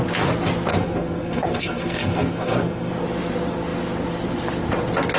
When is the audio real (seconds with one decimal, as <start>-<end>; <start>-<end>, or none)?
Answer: 0.0-0.7; 2.9-5.2

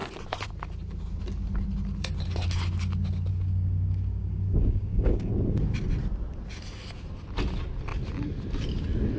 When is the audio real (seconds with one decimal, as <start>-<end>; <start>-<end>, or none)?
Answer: 0.0-3.3; 5.3-9.2

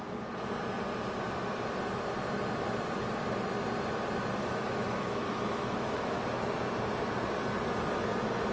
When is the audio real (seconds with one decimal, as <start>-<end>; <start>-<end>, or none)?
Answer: 0.0-4.4; 6.2-8.5